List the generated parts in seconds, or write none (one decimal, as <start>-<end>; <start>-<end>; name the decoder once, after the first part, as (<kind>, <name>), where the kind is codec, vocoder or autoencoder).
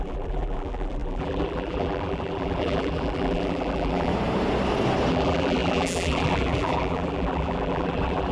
0.0-4.1 (vocoder, BigVGAN v2); 5.1-8.3